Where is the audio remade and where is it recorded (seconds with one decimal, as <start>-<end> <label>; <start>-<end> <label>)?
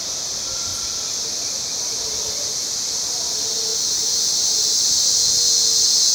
0.0-6.1 recorded